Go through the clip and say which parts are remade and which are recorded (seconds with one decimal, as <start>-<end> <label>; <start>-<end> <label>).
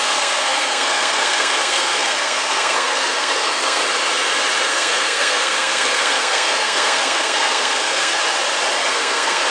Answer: 0.0-3.8 remade; 3.8-4.7 recorded; 4.7-8.2 remade; 8.2-8.9 recorded; 8.9-9.5 remade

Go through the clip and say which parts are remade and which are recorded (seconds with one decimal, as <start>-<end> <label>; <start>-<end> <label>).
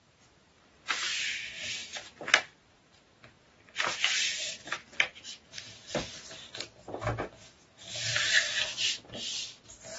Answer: 0.0-4.8 recorded; 4.8-5.6 remade; 5.6-10.0 recorded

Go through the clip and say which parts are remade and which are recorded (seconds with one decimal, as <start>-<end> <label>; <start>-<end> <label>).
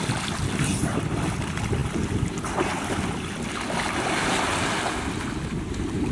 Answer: 0.0-6.1 recorded